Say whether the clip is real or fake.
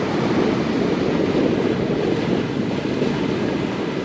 real